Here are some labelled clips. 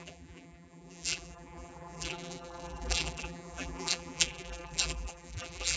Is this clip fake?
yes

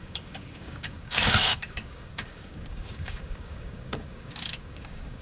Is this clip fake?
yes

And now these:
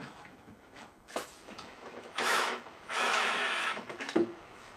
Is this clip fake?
yes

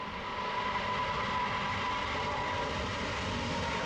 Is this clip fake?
no